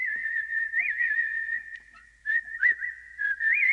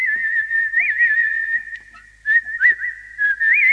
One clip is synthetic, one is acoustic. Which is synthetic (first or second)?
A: first